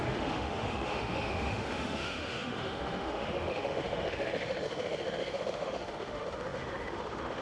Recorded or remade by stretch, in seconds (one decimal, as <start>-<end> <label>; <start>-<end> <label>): 0.0-7.4 remade